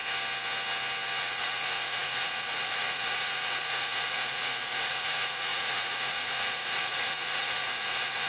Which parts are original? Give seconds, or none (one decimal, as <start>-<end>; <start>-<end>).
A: 0.0-1.2

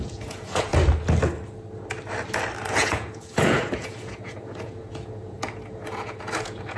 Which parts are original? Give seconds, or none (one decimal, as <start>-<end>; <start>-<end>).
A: 0.7-2.7

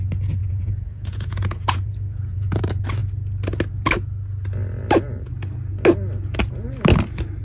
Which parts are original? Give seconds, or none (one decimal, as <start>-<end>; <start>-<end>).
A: 0.0-0.4; 2.6-7.4

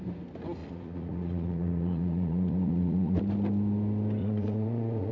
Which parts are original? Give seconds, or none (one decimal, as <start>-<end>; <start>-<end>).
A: 0.0-0.6; 3.2-4.2